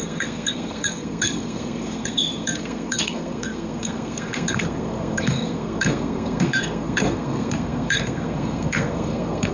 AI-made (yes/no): yes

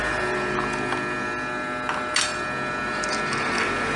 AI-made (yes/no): no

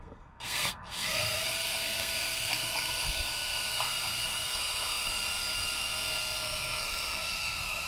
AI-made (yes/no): yes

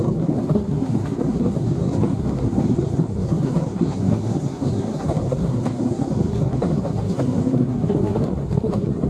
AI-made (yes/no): yes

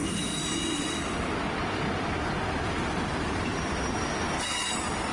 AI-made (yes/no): no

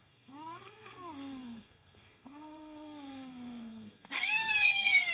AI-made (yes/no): yes